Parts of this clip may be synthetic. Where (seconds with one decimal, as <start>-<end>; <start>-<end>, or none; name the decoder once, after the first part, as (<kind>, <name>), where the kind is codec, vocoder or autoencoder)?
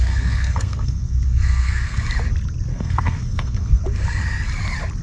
0.0-2.0 (codec, SNAC); 2.7-3.8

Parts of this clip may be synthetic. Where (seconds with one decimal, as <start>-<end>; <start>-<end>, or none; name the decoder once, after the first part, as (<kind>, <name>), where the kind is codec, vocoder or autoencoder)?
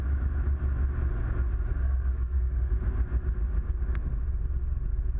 1.7-2.7 (codec, SNAC)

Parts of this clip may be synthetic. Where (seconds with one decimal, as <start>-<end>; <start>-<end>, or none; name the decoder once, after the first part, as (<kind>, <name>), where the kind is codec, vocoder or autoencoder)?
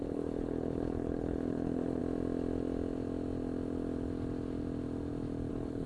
0.0-2.0 (codec, HILCodec); 5.5-5.9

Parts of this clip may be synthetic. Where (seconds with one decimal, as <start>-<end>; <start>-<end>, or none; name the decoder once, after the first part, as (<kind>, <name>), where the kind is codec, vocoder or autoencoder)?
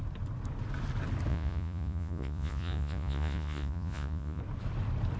1.3-4.4 (vocoder, Vocos)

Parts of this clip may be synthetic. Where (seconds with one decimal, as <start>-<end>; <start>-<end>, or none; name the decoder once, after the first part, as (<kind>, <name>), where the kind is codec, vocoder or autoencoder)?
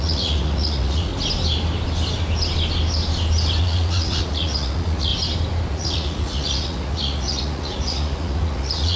0.0-1.1 (vocoder, Vocos); 3.6-5.1; 5.7-9.0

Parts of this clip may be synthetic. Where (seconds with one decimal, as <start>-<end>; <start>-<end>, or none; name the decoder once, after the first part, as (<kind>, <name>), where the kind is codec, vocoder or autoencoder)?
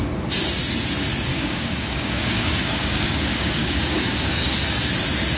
1.3-4.5 (codec, DAC)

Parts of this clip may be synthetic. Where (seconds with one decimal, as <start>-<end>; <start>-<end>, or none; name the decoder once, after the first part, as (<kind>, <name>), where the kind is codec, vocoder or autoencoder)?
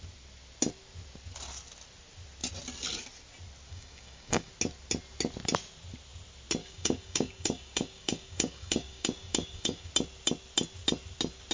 3.7-4.5 (codec, DAC); 6.6-9.9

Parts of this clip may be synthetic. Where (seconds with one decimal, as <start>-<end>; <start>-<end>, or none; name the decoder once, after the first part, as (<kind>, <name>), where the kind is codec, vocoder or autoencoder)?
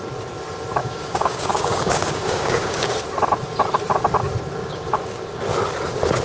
0.8-2.9 (codec, DAC); 4.6-5.4